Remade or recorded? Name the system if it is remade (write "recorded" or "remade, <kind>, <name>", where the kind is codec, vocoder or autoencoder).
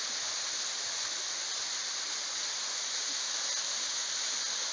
recorded